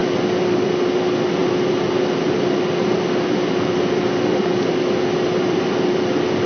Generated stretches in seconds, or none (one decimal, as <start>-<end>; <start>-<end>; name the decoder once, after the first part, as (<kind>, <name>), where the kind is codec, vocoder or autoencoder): none